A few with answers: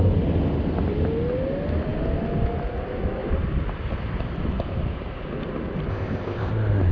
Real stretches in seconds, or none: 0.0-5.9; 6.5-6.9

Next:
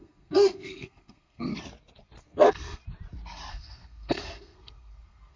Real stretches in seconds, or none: 1.5-2.2; 2.8-3.5

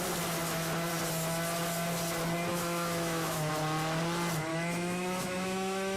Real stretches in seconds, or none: 0.0-2.5; 3.5-4.5

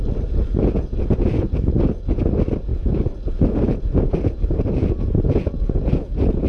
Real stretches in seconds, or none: 0.0-0.6; 1.5-2.7

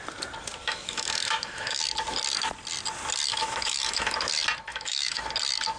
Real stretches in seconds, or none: 0.0-0.6; 1.8-3.3; 4.3-4.7; 5.2-5.8

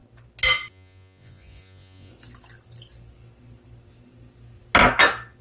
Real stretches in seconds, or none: 0.0-0.7; 2.1-5.4

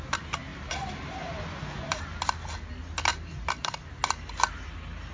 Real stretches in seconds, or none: 0.0-0.5; 2.0-3.1; 3.9-5.1

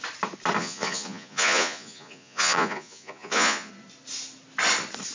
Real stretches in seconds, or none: 0.0-0.6; 3.7-5.1